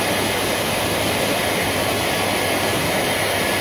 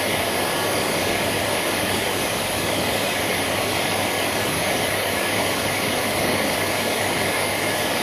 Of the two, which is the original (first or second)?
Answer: first